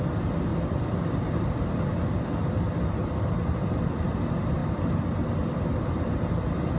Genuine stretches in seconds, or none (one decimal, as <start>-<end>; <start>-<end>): 0.0-6.8